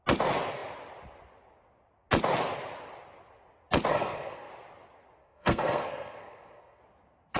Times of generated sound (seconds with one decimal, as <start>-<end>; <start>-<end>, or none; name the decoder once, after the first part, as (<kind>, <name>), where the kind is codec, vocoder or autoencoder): 3.9-4.5 (codec, SNAC); 5.2-6.8